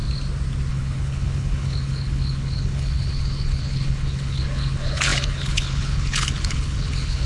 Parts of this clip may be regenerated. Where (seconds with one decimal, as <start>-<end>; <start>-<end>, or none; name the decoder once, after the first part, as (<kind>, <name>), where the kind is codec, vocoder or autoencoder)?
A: 0.7-7.3 (codec, HILCodec)